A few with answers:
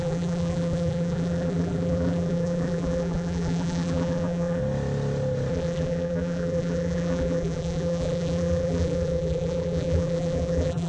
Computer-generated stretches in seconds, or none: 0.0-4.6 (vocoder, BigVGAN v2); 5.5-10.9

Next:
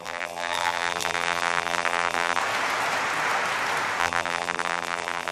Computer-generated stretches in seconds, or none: 0.0-2.4 (vocoder, BigVGAN v2); 4.0-5.3

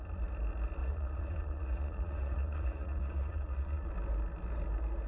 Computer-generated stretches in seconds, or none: 0.8-3.9 (vocoder, Vocos)

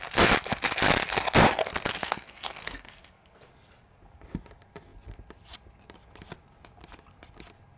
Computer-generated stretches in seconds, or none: 2.0-3.5 (codec, SNAC)

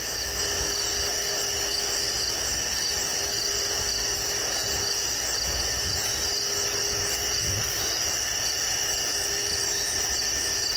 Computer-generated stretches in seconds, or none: none

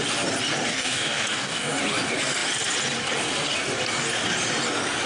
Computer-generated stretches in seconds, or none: 0.7-1.8 (codec, DAC)

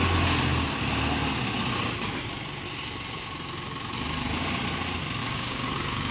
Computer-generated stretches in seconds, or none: 5.2-6.1 (codec, DAC)